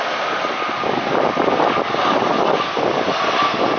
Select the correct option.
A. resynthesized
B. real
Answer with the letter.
B